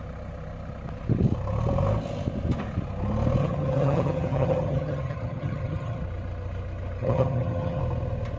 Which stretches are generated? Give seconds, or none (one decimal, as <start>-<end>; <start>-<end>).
3.4-6.0; 7.0-7.8